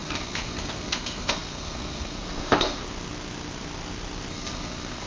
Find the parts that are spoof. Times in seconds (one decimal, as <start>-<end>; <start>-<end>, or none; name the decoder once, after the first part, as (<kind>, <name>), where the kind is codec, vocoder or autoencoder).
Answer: 0.0-2.8 (codec, SNAC); 4.3-5.1